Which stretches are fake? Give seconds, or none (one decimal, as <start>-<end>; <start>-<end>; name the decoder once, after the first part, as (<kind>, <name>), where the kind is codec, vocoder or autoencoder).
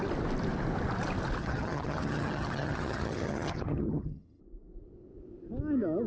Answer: 1.4-4.4 (vocoder, HiFi-GAN)